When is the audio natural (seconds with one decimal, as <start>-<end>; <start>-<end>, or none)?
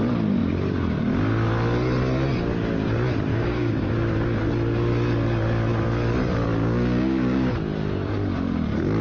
0.0-3.3; 3.9-6.6; 7.5-9.0